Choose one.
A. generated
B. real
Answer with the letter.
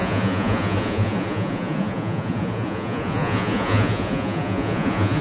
A